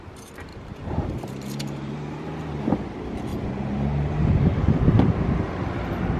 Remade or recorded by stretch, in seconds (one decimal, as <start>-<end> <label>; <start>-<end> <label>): 0.0-0.5 recorded; 0.5-2.5 remade; 2.5-6.2 recorded

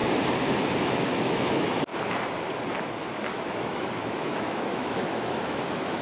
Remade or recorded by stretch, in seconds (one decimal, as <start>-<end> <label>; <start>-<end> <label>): 0.0-0.8 recorded; 0.8-1.9 remade; 1.9-3.3 recorded; 3.3-6.0 remade

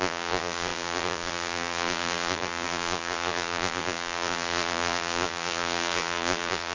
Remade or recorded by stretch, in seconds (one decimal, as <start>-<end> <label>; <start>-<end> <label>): 0.0-6.7 remade

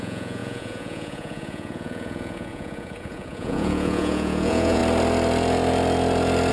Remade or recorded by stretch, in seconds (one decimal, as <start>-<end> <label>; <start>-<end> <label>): 0.0-4.8 remade; 4.8-6.5 recorded

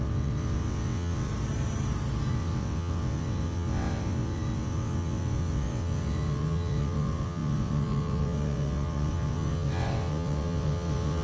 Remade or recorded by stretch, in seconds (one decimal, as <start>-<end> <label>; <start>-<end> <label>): 0.0-1.3 remade; 1.3-2.3 recorded; 2.3-11.2 remade

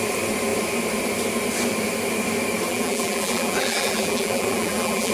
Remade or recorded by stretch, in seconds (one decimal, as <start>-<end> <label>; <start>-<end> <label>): 0.0-2.7 recorded; 2.7-5.1 remade